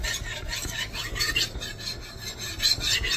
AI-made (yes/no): no